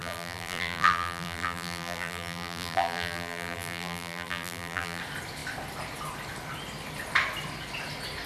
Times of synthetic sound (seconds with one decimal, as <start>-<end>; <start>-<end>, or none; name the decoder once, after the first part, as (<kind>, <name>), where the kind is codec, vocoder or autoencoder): 0.0-5.0 (vocoder, BigVGAN v2)